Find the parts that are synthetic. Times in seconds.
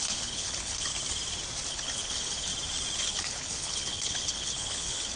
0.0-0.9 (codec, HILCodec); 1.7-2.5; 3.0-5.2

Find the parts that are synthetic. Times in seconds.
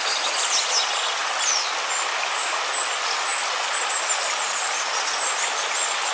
none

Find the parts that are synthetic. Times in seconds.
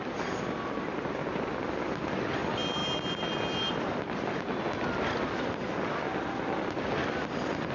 none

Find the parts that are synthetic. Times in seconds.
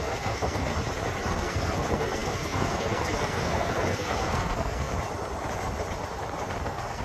0.0-0.7 (codec, SNAC); 1.3-4.9; 6.6-7.0